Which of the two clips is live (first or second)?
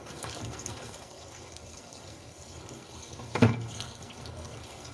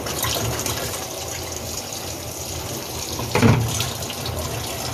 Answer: second